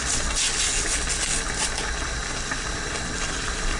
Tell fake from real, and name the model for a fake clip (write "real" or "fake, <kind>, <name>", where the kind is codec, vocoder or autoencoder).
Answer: real